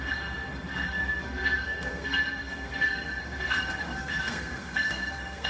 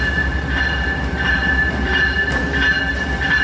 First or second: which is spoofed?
first